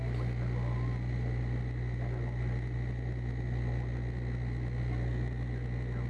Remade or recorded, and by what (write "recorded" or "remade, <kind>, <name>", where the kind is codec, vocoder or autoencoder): recorded